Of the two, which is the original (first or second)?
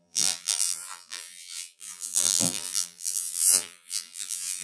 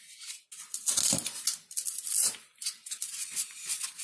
second